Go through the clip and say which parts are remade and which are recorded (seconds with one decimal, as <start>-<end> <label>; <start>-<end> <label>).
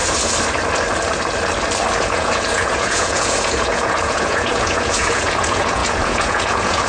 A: 0.0-2.0 recorded; 2.0-6.9 remade